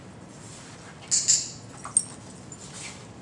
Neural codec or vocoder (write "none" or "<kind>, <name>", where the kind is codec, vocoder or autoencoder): none